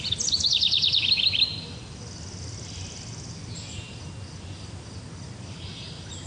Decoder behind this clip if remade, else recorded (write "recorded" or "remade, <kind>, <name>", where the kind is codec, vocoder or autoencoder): recorded